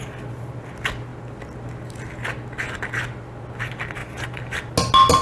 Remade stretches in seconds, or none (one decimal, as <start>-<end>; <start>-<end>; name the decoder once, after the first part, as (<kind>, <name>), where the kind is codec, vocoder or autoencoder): 4.0-4.7 (vocoder, BigVGAN v2)